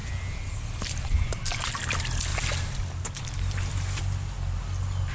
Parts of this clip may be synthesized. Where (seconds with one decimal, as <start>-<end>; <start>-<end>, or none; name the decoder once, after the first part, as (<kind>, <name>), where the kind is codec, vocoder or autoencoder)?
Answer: none